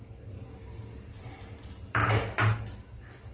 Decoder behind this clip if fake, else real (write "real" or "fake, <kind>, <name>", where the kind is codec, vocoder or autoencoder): real